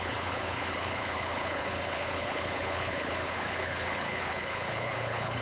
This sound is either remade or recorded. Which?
remade